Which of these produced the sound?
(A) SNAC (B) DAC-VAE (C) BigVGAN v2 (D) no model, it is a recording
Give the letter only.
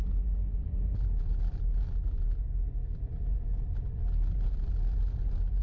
D